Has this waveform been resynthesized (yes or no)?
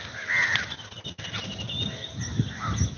no